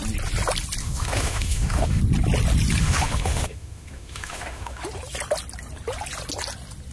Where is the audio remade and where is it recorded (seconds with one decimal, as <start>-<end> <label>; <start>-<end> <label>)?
0.0-0.8 recorded; 0.8-2.0 remade; 2.0-2.8 recorded; 2.8-4.8 remade; 4.8-6.9 recorded